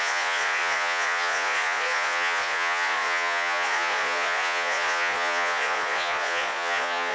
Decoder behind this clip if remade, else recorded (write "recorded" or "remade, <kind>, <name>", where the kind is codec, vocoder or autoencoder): remade, vocoder, Vocos